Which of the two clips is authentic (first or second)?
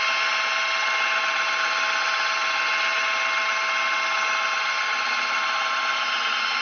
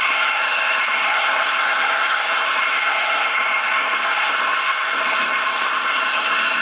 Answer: first